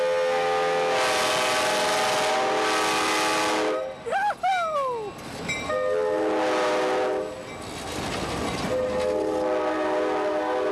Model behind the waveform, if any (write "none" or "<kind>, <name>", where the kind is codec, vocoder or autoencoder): none